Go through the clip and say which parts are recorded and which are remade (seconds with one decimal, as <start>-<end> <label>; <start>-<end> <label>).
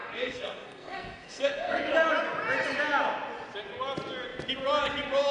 0.0-1.9 remade; 1.9-5.3 recorded